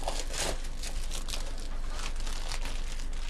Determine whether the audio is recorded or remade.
recorded